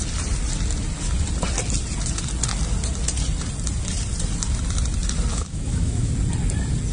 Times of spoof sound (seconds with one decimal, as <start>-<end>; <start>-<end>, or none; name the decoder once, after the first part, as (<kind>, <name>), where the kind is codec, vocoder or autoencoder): 5.3-6.1 (autoencoder, DAC-VAE)